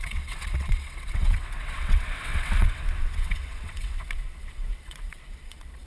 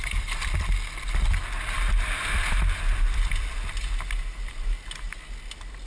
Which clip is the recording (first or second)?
second